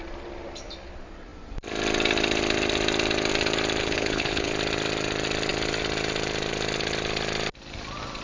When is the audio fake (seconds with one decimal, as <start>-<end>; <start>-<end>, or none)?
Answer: 3.8-4.5